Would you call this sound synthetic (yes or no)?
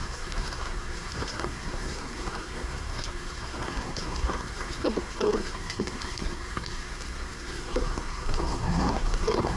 yes